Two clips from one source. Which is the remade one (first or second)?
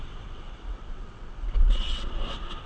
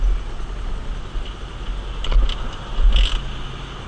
first